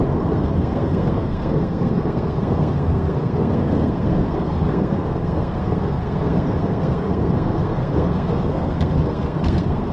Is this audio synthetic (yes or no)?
yes